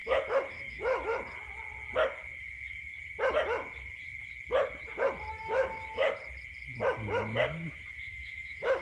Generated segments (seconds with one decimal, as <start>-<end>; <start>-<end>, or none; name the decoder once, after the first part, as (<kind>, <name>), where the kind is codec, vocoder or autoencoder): 0.0-1.1 (autoencoder, DAC-VAE); 2.4-2.9; 5.3-6.0; 7.9-8.8